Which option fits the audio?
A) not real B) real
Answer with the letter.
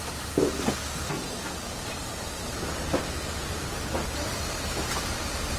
A